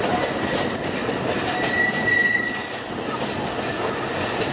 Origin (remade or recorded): recorded